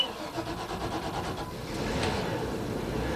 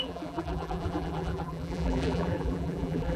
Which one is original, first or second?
first